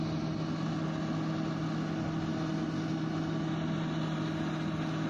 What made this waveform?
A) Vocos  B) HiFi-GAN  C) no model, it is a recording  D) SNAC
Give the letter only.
C